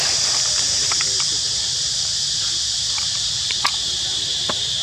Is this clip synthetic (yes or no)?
yes